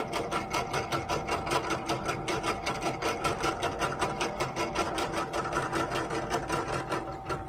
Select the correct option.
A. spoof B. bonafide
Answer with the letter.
B